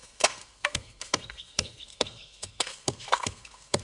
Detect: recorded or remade remade